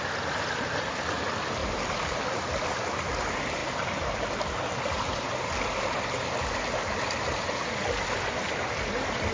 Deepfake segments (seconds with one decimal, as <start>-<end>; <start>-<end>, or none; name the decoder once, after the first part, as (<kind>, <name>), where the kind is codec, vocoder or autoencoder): none